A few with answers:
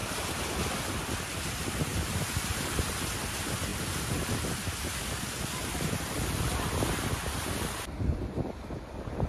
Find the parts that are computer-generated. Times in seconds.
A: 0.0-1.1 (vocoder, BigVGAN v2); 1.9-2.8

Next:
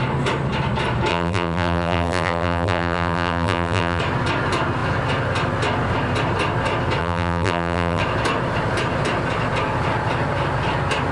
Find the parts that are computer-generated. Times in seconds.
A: 1.1-4.0 (vocoder, BigVGAN v2); 7.0-8.0

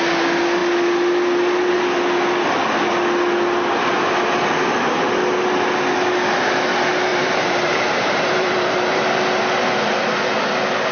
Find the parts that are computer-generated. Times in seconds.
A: 7.1-9.2 (vocoder, BigVGAN v2)

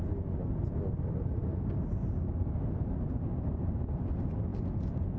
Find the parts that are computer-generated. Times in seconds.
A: 1.4-2.3 (vocoder, BigVGAN v2)

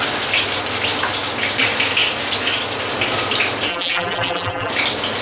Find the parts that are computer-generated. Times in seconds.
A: 3.7-4.7 (vocoder, BigVGAN v2)